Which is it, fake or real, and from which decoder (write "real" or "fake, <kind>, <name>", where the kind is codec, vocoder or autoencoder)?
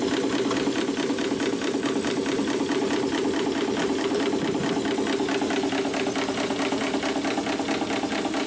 real